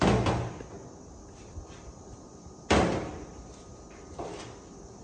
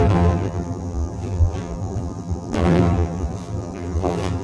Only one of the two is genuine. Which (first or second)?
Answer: first